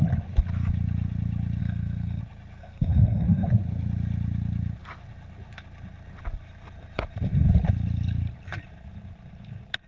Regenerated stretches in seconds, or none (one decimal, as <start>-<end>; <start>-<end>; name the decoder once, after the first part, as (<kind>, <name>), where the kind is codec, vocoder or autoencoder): 1.6-2.2 (codec, SNAC); 2.6-3.5